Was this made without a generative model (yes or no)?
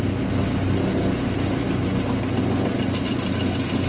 yes